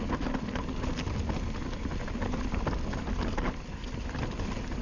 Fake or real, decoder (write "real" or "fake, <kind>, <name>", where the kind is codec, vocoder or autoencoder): real